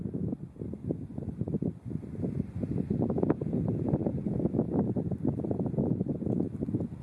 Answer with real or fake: real